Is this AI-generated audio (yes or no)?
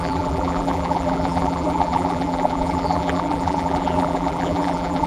yes